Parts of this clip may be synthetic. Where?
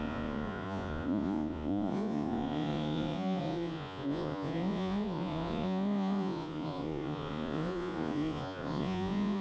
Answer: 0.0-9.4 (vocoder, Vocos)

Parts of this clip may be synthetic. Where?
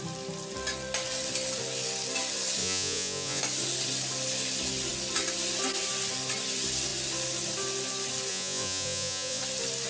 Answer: 2.6-3.4 (vocoder, Vocos); 8.3-9.4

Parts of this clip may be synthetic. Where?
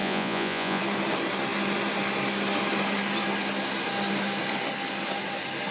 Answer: 0.0-0.8 (vocoder, Vocos)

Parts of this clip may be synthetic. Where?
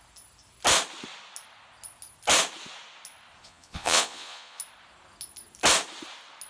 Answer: 3.4-4.6 (vocoder, Vocos)